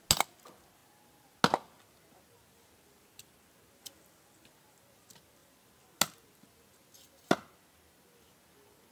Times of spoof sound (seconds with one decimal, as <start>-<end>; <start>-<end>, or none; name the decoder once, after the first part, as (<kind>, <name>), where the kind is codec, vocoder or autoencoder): none